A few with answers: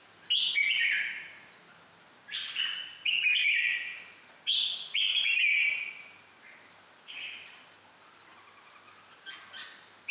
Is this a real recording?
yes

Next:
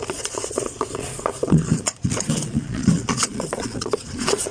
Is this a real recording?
no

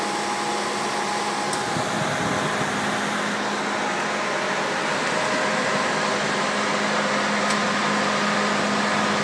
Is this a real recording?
yes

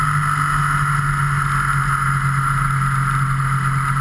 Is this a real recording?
yes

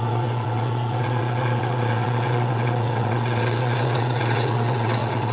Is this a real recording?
no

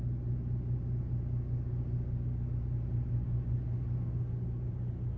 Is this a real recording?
yes